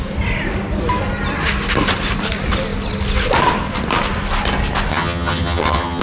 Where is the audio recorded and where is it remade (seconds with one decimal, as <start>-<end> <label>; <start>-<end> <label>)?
0.0-4.9 recorded; 4.9-6.0 remade